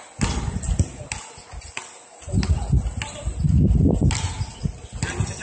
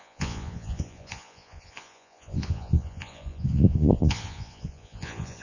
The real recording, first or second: first